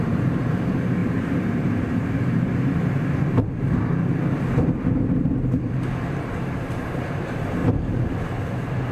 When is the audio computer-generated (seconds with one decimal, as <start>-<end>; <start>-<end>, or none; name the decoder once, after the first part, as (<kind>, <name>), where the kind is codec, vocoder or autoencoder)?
0.0-2.5 (vocoder, BigVGAN v2); 6.1-7.6